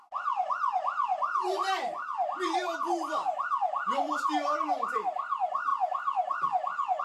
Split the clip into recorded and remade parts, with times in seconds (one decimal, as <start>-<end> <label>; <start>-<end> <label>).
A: 0.0-7.0 recorded